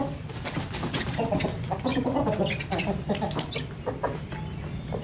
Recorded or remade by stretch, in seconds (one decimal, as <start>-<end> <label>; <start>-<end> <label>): 0.0-5.0 recorded